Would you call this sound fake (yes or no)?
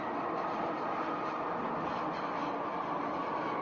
no